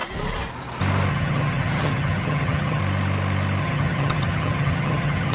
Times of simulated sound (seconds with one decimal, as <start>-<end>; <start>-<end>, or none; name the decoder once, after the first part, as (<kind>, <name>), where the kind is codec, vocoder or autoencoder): 1.1-2.8 (vocoder, HiFi-GAN); 3.6-5.3